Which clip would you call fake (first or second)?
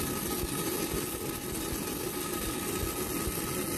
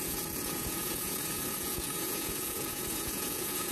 second